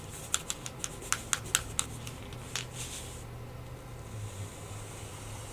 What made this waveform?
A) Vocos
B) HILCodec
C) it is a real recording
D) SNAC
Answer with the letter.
C